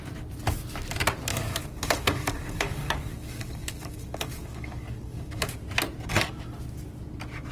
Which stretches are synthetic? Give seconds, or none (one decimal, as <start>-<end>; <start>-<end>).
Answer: 1.3-5.5

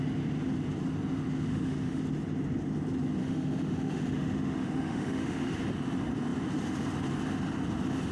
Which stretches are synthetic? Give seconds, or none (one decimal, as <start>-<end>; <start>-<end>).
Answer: 1.5-2.0; 3.2-5.6

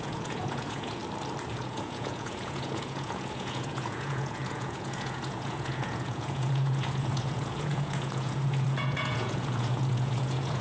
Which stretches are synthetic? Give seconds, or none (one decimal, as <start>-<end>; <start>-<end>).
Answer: 0.0-1.0; 1.5-10.6